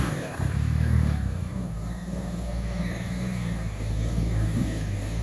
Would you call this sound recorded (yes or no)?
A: no